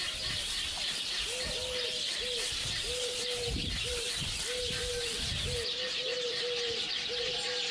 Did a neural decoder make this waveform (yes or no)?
no